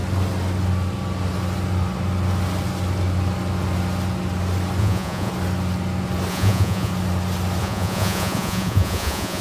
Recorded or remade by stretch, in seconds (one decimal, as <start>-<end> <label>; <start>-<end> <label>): 0.0-4.8 recorded; 4.8-5.3 remade; 5.3-6.3 recorded; 6.3-6.9 remade; 6.9-7.6 recorded; 7.6-9.4 remade